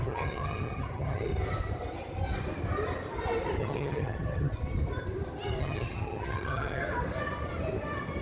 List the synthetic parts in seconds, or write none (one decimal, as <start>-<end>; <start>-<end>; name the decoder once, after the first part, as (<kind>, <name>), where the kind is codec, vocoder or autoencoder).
0.0-1.3 (vocoder, HiFi-GAN); 3.6-4.5; 5.6-6.8